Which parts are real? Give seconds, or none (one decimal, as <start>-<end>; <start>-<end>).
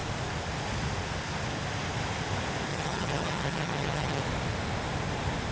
0.0-2.7; 4.2-5.5